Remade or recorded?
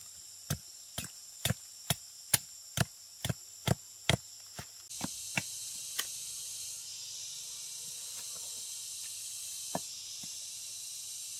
recorded